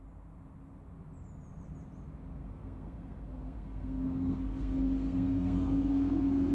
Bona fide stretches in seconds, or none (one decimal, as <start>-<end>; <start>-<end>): 0.0-2.4